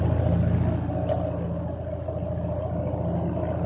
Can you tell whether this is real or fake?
real